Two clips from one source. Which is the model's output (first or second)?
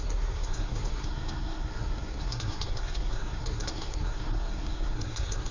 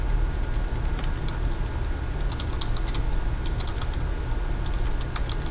first